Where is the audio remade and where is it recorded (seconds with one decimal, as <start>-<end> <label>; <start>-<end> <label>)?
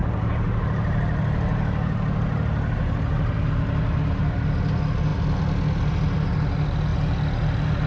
0.0-7.9 recorded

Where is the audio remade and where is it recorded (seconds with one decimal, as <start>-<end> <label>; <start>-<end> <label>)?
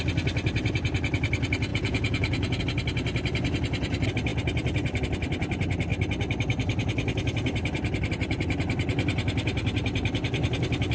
0.0-1.7 recorded; 1.7-2.6 remade; 2.6-10.9 recorded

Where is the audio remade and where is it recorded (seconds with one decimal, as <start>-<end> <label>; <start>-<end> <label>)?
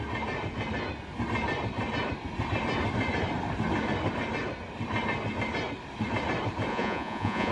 0.0-6.7 recorded; 6.7-7.5 remade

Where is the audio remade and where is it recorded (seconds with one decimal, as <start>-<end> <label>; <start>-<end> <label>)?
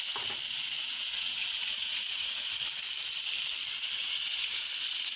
0.0-0.8 recorded; 0.8-2.5 remade; 2.5-4.0 recorded; 4.0-4.7 remade; 4.7-5.2 recorded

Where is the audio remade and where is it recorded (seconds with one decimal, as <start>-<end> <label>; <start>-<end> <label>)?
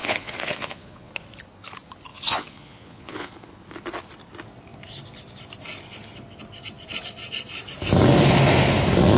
0.0-1.1 remade; 1.1-2.1 recorded; 2.1-3.3 remade; 3.3-9.2 recorded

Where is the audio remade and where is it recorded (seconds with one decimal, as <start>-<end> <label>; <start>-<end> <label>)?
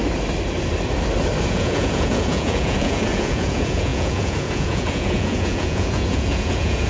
0.0-1.4 recorded; 1.4-6.9 remade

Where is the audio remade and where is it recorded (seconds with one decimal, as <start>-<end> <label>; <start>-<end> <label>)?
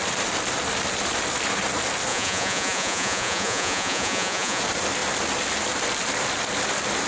0.0-2.1 recorded; 2.1-4.6 remade; 4.6-7.1 recorded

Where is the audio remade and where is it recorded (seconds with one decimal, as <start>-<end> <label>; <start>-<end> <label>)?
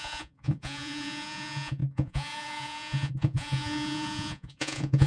0.0-5.1 remade